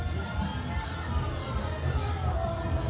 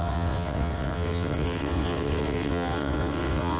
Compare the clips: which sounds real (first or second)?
first